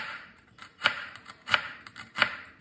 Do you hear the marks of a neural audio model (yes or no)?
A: yes